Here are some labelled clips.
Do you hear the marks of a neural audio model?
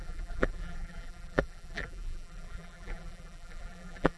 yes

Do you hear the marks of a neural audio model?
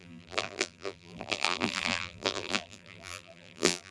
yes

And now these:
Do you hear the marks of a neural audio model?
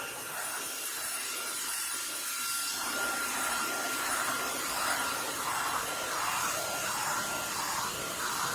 yes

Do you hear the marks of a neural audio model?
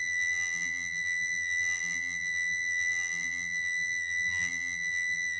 yes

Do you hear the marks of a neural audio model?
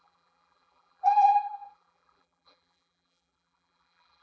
yes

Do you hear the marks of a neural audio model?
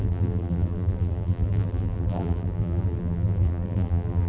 yes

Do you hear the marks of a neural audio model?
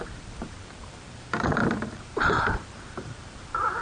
yes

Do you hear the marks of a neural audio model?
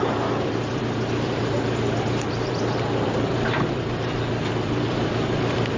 yes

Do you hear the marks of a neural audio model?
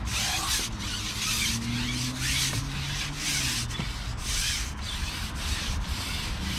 no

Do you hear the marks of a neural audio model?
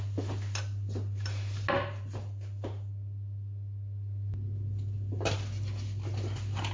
no